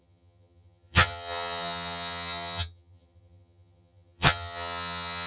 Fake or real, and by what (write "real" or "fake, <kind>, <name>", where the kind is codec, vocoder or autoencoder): fake, vocoder, HiFi-GAN